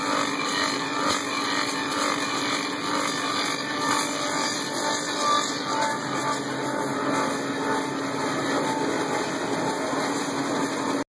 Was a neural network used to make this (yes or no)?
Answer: no